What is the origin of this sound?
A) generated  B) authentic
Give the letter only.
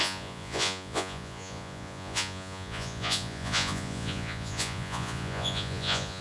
A